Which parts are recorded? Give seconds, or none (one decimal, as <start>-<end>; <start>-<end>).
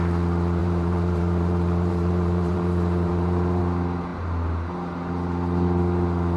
0.0-0.6; 3.6-6.4